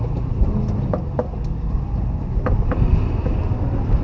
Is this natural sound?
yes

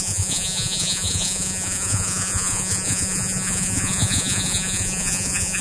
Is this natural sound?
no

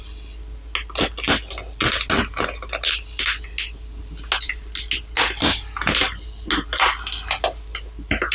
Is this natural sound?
yes